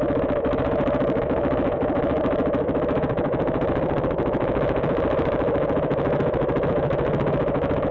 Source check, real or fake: fake